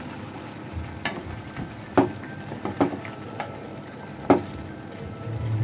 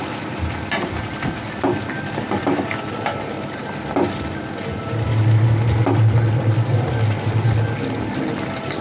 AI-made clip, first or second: second